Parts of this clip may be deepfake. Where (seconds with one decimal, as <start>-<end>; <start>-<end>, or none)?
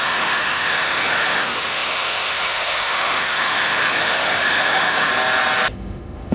0.0-5.1; 5.7-6.3